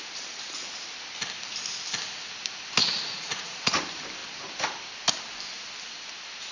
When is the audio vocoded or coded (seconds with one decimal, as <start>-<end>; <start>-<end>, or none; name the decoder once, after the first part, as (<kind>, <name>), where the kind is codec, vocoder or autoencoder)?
2.8-3.8 (vocoder, Vocos)